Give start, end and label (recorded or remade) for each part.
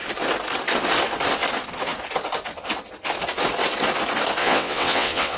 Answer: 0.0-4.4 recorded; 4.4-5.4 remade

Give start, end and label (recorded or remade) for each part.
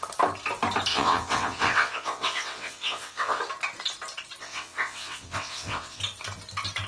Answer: 0.0-0.9 recorded; 0.9-3.4 remade; 3.4-4.4 recorded; 4.4-6.0 remade; 6.0-6.9 recorded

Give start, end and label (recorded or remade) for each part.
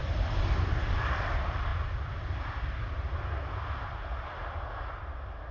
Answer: 0.0-5.5 recorded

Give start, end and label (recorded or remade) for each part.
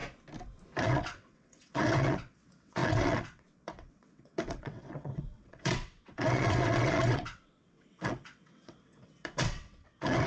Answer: 0.0-0.8 recorded; 0.8-10.3 remade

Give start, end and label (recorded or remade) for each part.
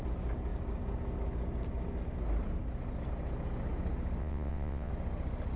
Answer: 0.0-4.2 recorded; 4.2-4.9 remade; 4.9-5.6 recorded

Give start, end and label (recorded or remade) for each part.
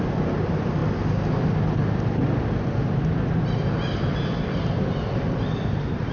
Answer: 0.0-6.1 recorded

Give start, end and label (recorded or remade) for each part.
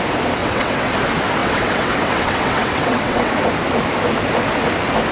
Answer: 0.0-0.4 recorded; 0.4-0.9 remade; 0.9-1.4 recorded; 1.4-3.3 remade; 3.3-5.1 recorded